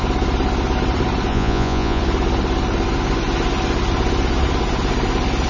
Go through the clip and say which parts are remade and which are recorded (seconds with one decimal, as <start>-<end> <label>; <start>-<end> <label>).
0.0-1.3 recorded; 1.3-2.0 remade; 2.0-5.5 recorded